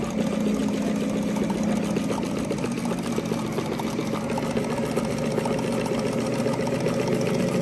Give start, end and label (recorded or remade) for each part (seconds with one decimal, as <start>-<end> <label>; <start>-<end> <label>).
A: 0.0-7.6 recorded